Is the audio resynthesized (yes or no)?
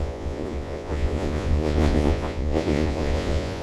yes